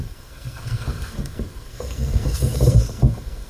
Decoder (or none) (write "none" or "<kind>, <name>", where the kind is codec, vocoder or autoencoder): codec, SNAC